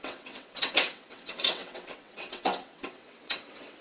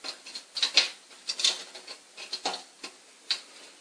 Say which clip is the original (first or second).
second